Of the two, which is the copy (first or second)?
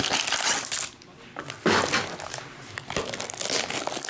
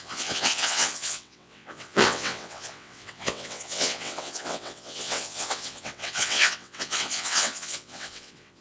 second